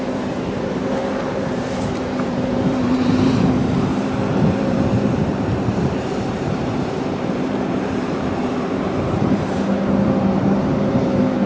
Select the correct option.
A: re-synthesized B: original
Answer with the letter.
A